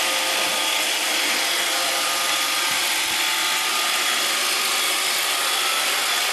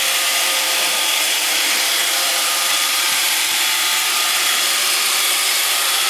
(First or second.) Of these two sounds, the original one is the first